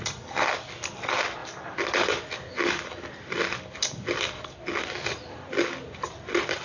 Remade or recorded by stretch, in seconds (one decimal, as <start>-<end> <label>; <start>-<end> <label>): 0.0-1.4 recorded; 1.4-5.4 remade; 5.4-6.6 recorded